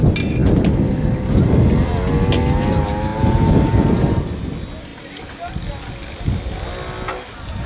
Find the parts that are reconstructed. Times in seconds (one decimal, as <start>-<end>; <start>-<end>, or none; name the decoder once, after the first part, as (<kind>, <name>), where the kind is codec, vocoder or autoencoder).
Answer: none